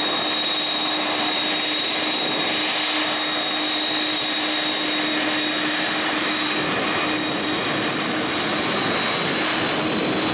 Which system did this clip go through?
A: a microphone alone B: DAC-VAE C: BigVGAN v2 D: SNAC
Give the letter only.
A